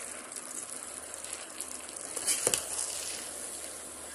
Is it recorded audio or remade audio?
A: recorded